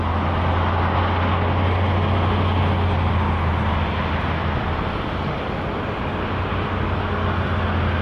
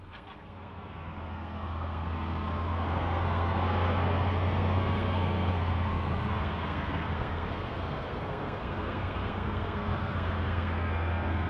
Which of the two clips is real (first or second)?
first